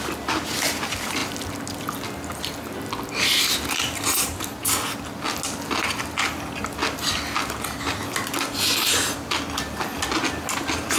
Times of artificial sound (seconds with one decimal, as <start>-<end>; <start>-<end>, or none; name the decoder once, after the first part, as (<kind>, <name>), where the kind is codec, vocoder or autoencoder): none